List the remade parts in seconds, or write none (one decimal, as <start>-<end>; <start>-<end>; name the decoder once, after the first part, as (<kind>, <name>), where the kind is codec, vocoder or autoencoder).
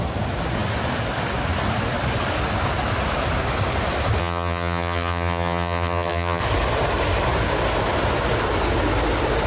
4.2-6.4 (vocoder, HiFi-GAN)